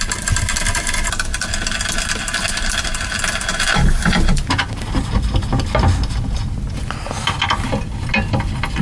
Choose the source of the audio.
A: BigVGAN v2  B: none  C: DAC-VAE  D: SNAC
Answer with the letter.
B